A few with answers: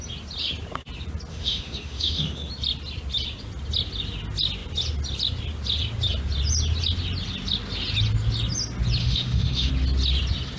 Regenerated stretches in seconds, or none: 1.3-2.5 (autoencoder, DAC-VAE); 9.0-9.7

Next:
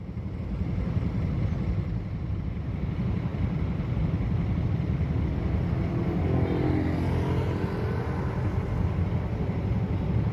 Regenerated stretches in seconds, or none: none